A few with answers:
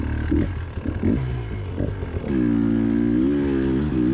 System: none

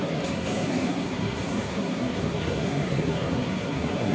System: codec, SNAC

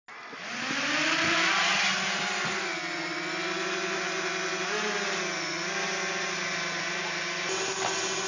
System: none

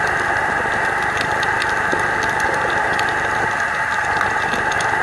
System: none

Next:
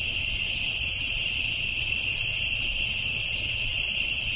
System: none